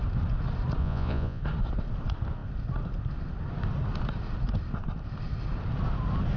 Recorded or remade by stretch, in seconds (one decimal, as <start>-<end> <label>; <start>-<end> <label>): 0.0-0.8 recorded; 0.8-1.4 remade; 1.4-6.4 recorded